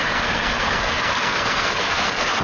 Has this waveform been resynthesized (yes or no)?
yes